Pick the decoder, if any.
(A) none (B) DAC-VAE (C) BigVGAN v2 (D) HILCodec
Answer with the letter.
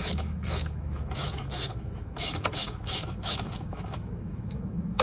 B